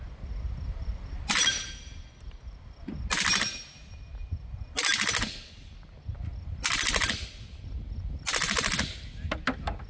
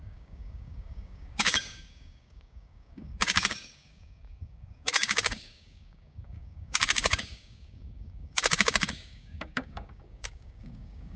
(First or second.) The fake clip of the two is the second